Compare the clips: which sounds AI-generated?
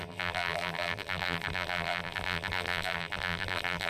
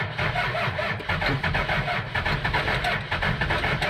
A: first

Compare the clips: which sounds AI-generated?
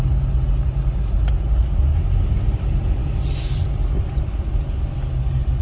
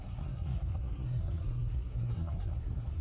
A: second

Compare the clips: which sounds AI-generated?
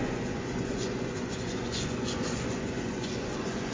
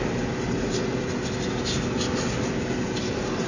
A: first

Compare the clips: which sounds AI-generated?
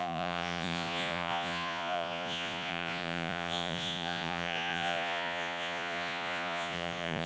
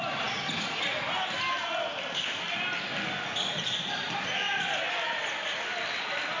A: first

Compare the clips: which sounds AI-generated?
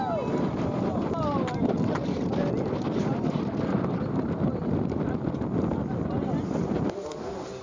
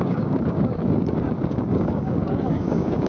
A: second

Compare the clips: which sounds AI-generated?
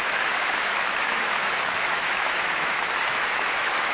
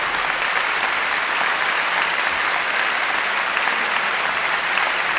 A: first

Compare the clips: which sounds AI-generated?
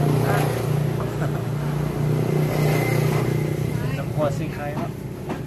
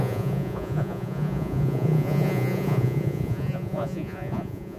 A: second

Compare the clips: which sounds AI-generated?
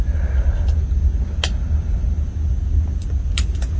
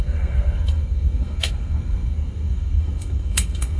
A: second